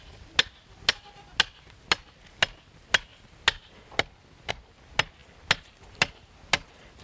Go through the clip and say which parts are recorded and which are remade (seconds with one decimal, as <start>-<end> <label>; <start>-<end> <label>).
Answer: 0.0-7.0 recorded

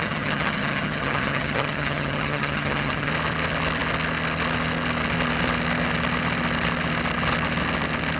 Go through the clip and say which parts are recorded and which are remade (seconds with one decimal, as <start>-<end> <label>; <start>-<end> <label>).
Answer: 0.0-3.1 remade; 3.1-8.2 recorded

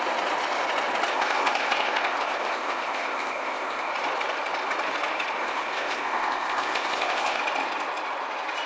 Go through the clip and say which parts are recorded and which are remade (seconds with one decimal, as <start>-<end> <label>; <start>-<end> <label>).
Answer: 0.0-1.1 recorded; 1.1-3.9 remade; 3.9-5.4 recorded; 5.4-7.4 remade; 7.4-8.7 recorded